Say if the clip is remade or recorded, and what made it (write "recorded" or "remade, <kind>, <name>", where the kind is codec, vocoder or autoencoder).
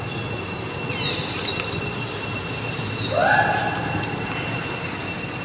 recorded